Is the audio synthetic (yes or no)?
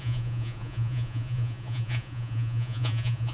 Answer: yes